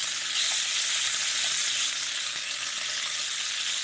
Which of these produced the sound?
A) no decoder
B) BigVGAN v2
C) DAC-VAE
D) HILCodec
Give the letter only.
A